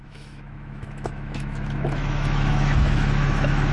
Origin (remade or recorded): remade